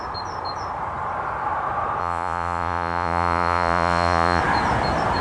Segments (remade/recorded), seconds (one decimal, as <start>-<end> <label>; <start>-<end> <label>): 0.0-2.0 recorded; 2.0-4.4 remade; 4.4-5.2 recorded